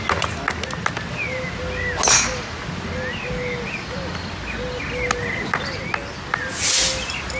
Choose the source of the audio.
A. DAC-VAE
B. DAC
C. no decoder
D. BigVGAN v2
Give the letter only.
C